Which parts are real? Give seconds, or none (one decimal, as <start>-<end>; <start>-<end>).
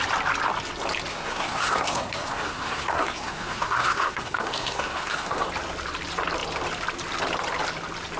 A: 0.0-1.1; 5.5-8.2